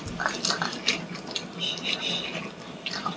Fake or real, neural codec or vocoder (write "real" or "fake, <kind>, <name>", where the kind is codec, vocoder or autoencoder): real